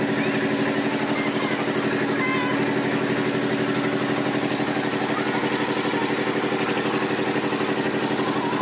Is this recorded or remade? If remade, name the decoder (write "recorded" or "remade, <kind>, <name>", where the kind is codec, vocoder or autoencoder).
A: recorded